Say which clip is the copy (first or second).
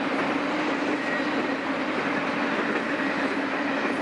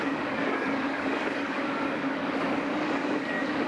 second